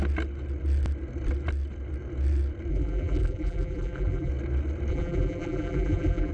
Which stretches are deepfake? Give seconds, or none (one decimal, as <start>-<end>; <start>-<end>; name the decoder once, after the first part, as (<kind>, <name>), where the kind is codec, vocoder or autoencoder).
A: 2.7-4.3 (vocoder, BigVGAN v2); 4.9-6.3